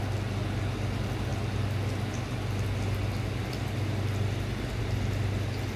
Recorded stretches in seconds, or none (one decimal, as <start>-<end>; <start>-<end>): 0.0-5.8